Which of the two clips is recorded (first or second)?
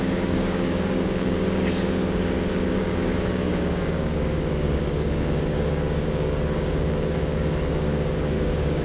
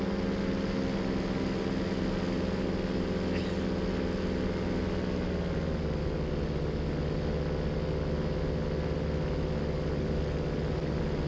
second